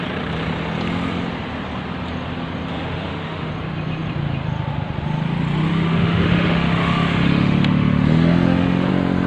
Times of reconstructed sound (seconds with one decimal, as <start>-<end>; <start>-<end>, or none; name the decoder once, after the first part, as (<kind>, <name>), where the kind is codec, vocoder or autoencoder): 2.7-3.5 (autoencoder, DAC-VAE); 5.7-8.9